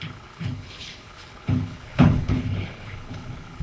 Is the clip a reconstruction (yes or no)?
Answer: yes